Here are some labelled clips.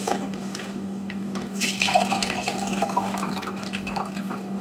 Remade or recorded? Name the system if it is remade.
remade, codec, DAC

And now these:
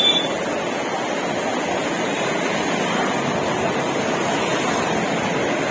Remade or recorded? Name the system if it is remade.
recorded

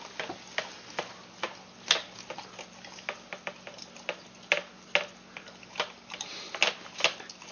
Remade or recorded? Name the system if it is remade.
recorded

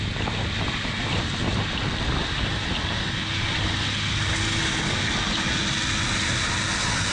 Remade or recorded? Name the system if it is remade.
recorded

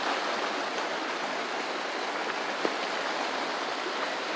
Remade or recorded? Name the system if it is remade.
recorded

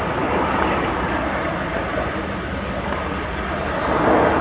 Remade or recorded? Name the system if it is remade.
recorded